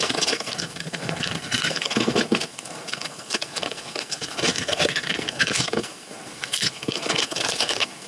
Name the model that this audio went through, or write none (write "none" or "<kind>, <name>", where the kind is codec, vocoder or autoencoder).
codec, SNAC